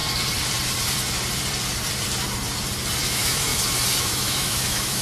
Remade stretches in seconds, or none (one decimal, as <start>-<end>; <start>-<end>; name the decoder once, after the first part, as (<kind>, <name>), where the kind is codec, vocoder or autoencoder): 3.0-3.5 (autoencoder, DAC-VAE); 4.0-5.0